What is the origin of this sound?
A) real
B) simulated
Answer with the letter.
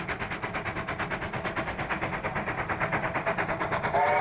A